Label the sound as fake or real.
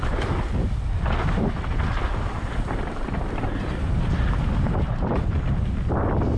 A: fake